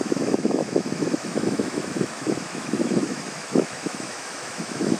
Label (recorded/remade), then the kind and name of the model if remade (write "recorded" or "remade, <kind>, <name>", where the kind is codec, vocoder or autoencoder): remade, autoencoder, DAC-VAE